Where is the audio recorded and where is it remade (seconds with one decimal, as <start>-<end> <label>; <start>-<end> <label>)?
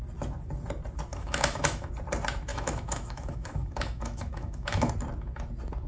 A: 0.0-1.1 recorded; 1.1-1.9 remade; 1.9-2.5 recorded; 2.5-4.9 remade; 4.9-5.9 recorded